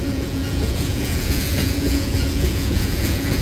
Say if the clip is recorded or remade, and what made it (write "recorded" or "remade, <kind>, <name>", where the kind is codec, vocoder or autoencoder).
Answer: remade, vocoder, Vocos